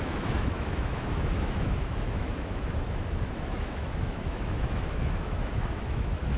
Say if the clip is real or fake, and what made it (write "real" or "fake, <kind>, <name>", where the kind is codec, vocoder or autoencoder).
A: fake, autoencoder, DAC-VAE